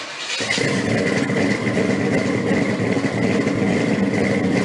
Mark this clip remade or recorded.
recorded